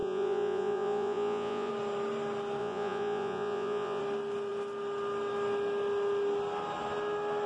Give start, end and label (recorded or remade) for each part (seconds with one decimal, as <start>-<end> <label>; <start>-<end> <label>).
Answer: 0.0-1.7 remade; 1.7-2.6 recorded; 2.6-4.0 remade; 4.0-7.5 recorded